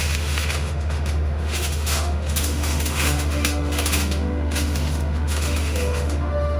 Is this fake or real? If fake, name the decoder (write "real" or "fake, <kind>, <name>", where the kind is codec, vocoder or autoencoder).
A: fake, autoencoder, DAC-VAE